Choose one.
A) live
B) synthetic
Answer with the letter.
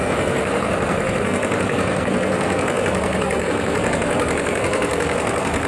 B